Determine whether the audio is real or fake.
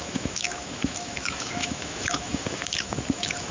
fake